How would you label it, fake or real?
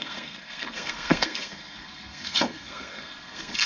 fake